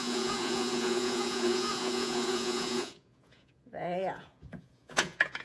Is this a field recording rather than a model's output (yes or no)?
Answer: no